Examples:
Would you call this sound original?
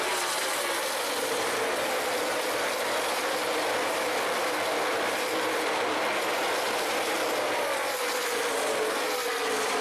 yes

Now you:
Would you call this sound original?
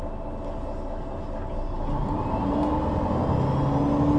yes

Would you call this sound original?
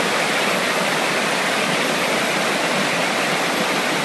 yes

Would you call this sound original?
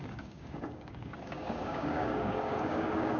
no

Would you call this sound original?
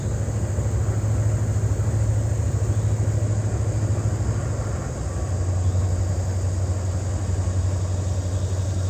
yes